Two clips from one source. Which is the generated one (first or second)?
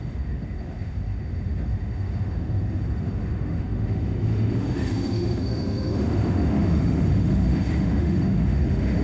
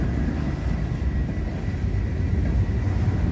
first